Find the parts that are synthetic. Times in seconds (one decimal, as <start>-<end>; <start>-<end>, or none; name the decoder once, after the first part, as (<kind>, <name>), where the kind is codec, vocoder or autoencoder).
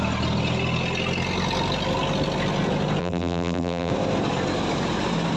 3.0-3.9 (vocoder, BigVGAN v2)